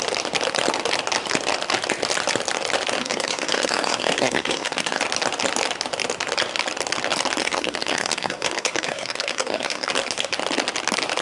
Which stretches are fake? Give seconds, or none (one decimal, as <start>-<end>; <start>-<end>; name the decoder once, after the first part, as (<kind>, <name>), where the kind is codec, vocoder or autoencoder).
3.0-5.0 (codec, SNAC); 7.4-9.9